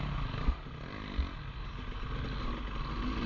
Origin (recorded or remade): recorded